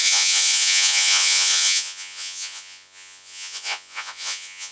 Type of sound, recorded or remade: remade